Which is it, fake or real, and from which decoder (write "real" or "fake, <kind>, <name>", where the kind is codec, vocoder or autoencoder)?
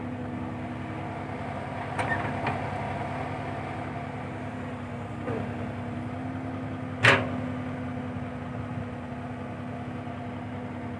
real